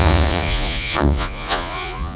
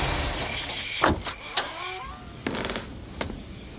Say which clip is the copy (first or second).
first